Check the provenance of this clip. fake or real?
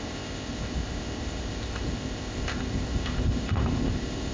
fake